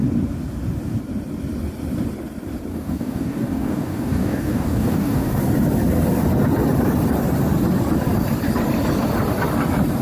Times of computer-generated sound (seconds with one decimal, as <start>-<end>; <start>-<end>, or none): 2.7-5.4